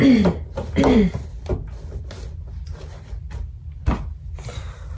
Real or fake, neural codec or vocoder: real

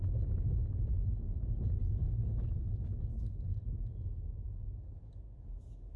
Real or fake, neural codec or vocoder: real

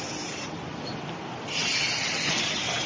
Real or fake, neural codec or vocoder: real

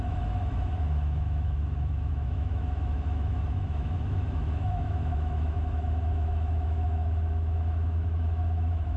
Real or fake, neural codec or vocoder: fake, autoencoder, DAC-VAE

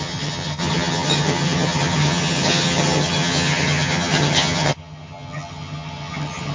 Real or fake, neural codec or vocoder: fake, vocoder, HiFi-GAN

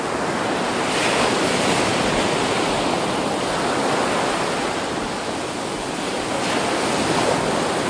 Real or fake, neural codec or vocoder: real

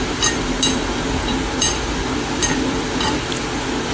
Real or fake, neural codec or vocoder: fake, vocoder, BigVGAN v2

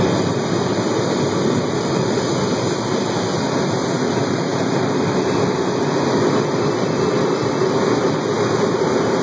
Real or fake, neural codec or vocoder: real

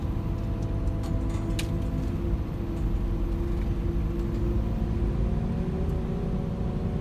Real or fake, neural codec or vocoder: real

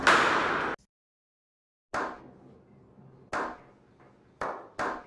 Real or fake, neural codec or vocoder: real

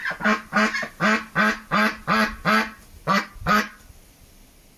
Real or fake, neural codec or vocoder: real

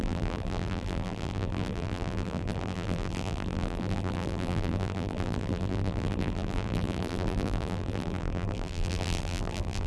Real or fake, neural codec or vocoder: fake, vocoder, BigVGAN v2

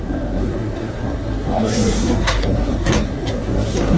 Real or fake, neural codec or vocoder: fake, codec, SNAC